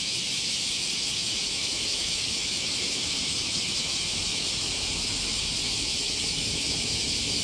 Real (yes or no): no